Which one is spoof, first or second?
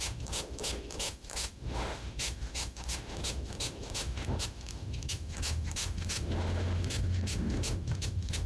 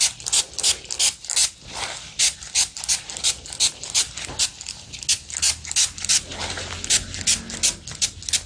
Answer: first